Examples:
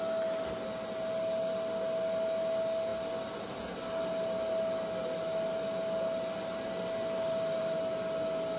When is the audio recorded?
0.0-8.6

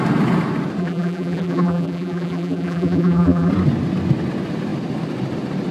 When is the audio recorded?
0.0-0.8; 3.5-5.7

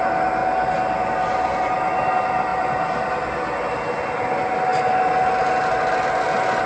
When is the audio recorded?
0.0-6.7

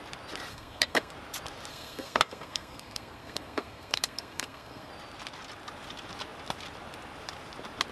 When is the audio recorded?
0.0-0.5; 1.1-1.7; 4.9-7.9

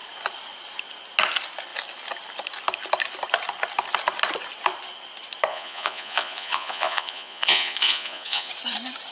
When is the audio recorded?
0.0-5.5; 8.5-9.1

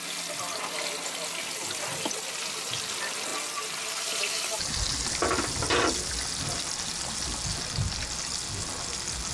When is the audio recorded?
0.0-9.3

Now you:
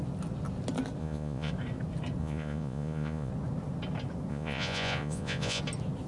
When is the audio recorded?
0.0-1.0; 1.5-2.2; 3.3-4.3; 5.6-6.1

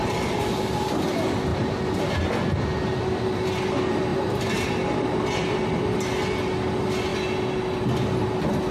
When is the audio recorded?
0.0-0.4; 0.9-1.5; 2.0-4.1; 4.7-8.7